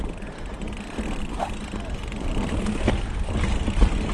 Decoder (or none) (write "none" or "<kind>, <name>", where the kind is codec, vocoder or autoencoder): none